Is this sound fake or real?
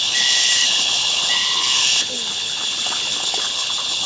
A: fake